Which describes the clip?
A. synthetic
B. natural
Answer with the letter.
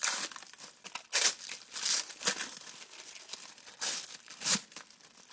B